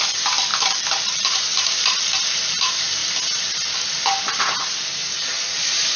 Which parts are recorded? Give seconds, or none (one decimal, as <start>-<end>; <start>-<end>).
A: 3.0-4.4